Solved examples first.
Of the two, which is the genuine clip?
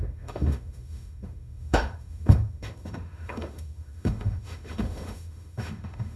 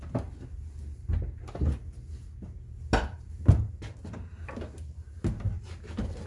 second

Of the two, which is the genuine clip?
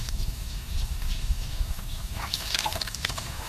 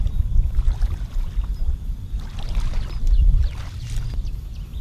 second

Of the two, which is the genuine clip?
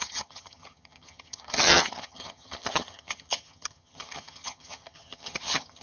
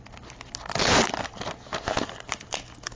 second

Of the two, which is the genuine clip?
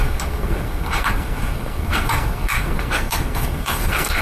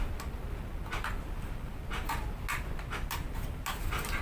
second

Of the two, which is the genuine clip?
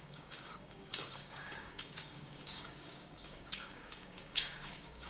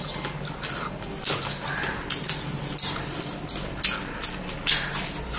second